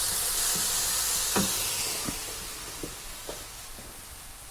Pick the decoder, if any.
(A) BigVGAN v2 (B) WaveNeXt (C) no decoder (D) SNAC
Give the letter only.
C